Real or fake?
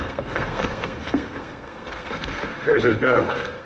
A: fake